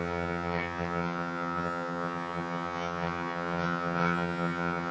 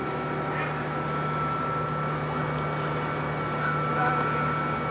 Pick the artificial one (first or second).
first